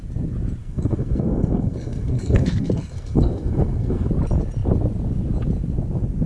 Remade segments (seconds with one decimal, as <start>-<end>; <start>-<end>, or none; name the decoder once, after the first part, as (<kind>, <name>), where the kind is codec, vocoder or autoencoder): 0.6-4.1 (codec, SNAC)

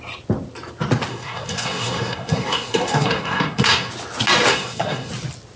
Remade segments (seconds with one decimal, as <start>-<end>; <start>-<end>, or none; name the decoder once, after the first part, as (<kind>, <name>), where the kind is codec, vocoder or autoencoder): 1.1-3.9 (codec, SNAC); 4.5-5.1

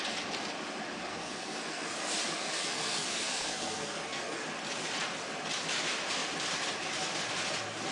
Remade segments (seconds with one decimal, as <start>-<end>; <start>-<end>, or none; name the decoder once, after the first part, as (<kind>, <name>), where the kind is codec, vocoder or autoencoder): 1.1-2.0 (codec, SNAC); 2.4-4.4

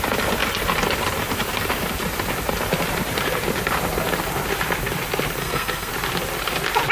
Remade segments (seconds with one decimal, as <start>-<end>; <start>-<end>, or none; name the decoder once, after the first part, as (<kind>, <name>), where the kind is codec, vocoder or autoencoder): 5.4-5.9 (codec, SNAC)

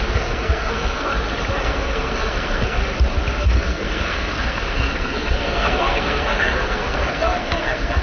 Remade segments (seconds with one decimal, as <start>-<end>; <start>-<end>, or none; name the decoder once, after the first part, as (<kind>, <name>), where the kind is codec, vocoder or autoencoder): 0.0-1.1 (codec, SNAC); 1.6-2.8; 3.4-8.0

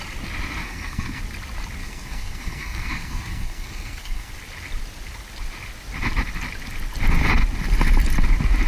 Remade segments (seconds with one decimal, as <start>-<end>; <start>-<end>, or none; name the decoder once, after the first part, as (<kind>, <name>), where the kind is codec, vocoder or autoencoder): 0.6-1.2 (codec, SNAC); 1.8-4.3

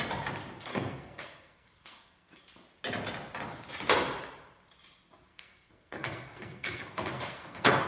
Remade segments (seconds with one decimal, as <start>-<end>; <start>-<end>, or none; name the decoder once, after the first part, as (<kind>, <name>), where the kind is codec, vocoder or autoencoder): 0.7-2.4 (codec, SNAC); 5.3-7.9